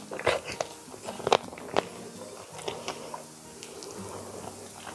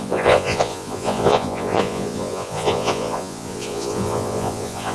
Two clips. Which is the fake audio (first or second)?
second